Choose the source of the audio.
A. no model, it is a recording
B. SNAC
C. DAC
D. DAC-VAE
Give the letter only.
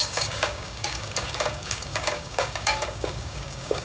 C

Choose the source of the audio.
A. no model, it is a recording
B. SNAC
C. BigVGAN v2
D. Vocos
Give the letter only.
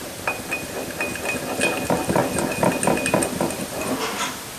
A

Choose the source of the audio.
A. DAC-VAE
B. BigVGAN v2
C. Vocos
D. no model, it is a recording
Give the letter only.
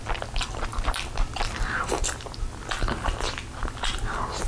D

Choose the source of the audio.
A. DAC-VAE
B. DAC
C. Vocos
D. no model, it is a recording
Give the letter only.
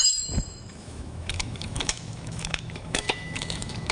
A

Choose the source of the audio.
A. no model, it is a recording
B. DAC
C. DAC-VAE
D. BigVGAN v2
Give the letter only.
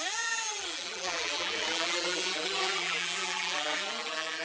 D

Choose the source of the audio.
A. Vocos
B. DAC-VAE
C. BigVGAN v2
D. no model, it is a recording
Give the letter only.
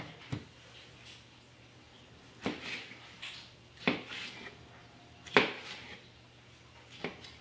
D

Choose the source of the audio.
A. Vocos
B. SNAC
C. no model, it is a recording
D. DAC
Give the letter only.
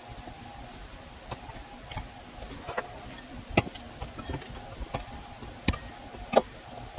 C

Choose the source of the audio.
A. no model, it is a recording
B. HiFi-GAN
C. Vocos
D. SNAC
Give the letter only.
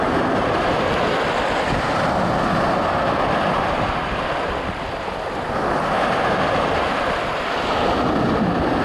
A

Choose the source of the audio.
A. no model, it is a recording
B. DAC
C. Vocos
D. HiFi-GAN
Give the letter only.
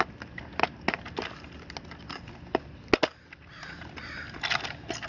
A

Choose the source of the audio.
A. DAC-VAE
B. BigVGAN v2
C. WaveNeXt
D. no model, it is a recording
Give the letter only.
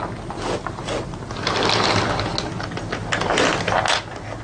D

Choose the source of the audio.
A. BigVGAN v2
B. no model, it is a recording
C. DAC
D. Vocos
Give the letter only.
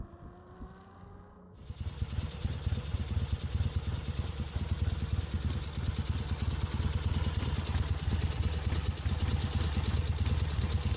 B